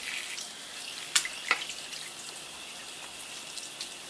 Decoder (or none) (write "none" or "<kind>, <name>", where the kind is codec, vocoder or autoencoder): vocoder, BigVGAN v2